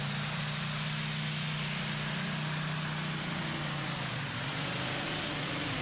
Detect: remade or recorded recorded